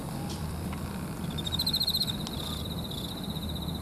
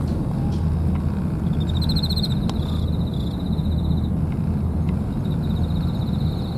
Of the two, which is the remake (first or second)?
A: first